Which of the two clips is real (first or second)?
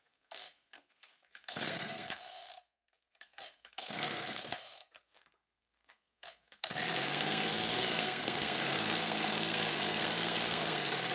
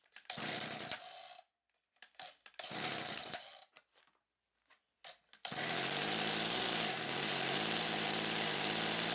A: second